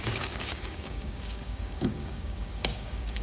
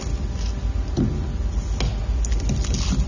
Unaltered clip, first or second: second